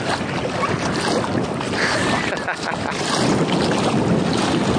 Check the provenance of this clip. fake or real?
real